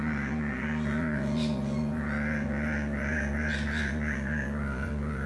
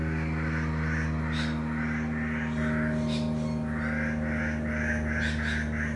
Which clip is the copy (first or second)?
first